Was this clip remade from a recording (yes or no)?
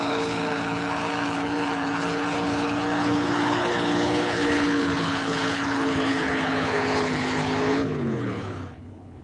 yes